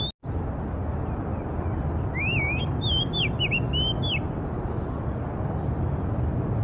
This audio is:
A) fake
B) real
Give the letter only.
B